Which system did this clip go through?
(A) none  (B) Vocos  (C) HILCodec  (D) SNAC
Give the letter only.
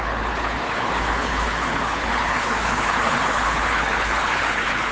C